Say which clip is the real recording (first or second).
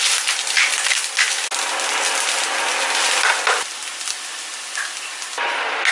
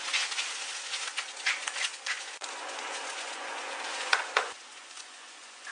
first